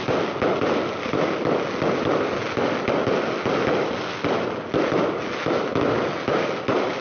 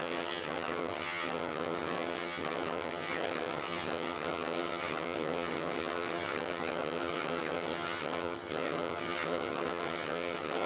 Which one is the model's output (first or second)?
second